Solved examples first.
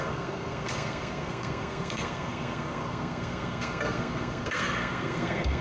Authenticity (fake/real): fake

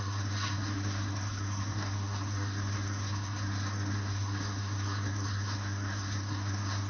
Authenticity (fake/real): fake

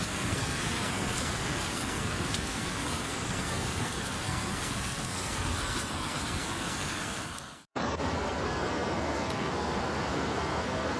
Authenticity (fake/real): fake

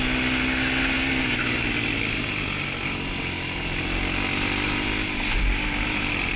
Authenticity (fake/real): real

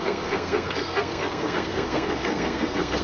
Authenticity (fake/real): fake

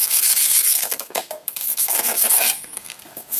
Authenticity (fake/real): fake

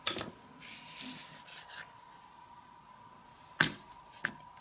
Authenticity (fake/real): real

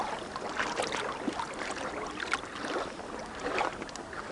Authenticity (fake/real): real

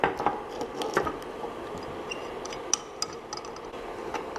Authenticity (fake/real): real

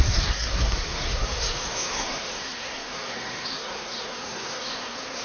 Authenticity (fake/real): fake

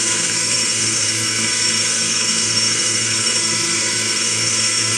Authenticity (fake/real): fake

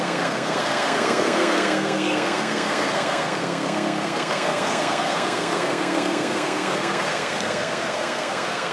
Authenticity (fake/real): fake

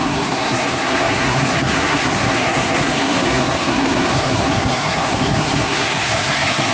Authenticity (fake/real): fake